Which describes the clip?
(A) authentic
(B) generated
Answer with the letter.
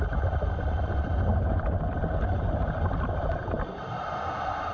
A